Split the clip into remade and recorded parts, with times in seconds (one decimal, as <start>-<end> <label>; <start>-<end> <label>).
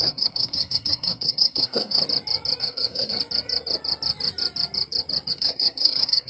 0.0-2.0 remade; 2.0-2.6 recorded; 2.6-3.2 remade; 3.2-5.3 recorded; 5.3-6.3 remade